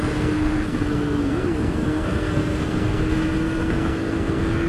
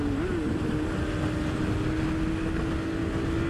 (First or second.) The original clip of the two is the second